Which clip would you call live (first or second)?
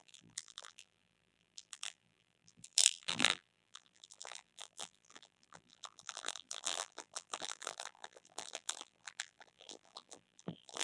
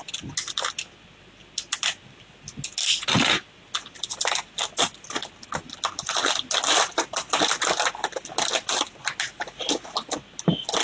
second